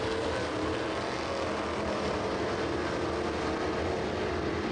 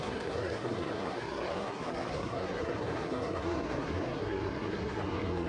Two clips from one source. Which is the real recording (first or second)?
first